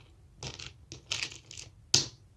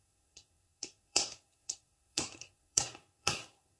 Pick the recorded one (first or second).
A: first